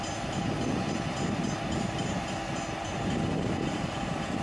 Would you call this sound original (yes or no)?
yes